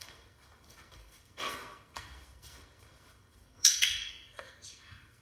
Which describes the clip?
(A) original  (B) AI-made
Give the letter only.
B